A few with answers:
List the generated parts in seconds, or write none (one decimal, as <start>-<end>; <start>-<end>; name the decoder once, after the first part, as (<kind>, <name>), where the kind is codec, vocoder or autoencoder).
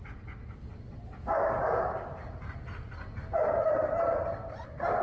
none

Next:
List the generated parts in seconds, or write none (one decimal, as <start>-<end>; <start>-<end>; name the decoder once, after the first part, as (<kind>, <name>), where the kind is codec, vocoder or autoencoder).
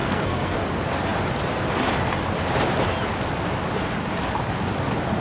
0.0-0.6 (codec, SNAC)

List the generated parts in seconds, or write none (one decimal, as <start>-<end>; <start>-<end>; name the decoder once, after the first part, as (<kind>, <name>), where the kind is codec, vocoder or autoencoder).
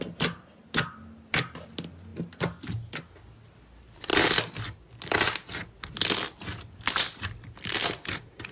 none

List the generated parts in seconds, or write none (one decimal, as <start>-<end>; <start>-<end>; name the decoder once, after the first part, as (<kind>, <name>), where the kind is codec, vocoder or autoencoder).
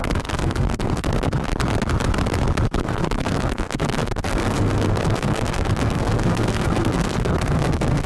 0.0-1.5 (codec, SNAC); 2.8-8.1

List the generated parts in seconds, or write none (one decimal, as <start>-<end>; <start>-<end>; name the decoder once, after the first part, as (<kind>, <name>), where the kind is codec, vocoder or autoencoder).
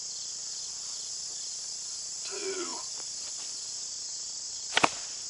none